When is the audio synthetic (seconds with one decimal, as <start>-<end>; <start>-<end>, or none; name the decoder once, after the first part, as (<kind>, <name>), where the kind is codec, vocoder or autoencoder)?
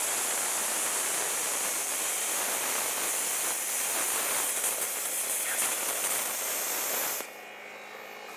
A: none